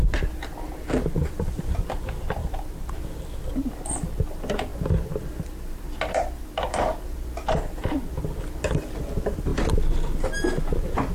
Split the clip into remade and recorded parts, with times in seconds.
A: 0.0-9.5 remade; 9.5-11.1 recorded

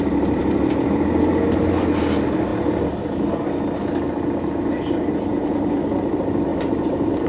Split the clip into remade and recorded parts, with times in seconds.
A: 0.0-6.5 recorded; 6.5-7.3 remade